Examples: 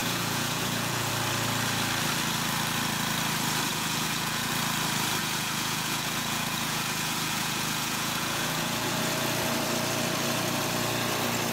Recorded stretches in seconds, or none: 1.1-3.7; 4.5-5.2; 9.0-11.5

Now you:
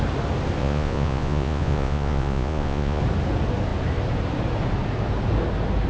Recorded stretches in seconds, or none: 0.0-0.6; 3.0-5.9